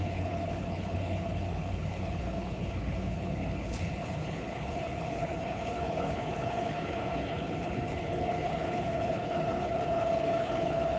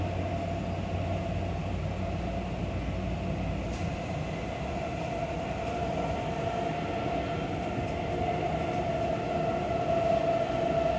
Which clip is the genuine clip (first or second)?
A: second